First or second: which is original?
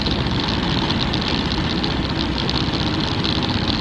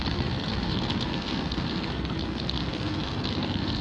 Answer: first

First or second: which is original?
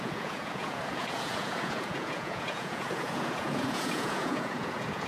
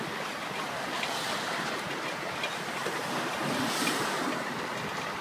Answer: second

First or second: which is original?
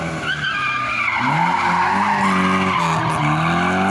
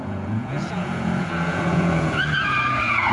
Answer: first